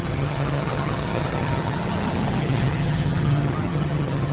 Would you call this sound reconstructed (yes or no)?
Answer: yes